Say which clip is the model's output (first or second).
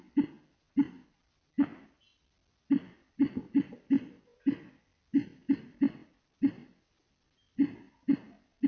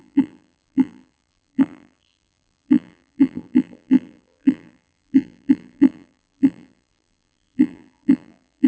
second